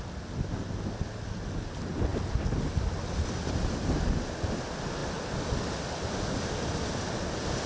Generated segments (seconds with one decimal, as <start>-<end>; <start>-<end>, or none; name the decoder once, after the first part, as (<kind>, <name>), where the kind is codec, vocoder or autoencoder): none